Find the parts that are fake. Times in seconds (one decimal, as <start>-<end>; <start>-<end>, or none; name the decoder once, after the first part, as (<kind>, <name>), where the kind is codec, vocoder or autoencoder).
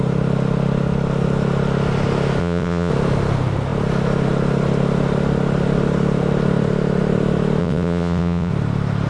2.4-2.9 (vocoder, WaveNeXt); 7.6-8.5